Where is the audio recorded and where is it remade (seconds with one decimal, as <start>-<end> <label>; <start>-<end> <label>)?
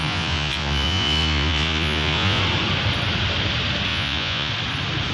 0.0-2.4 remade; 2.4-3.9 recorded; 3.9-4.5 remade; 4.5-5.1 recorded